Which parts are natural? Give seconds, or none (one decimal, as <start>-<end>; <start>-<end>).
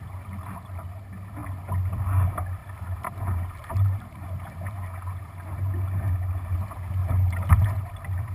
0.0-2.6; 5.2-7.0; 7.9-8.3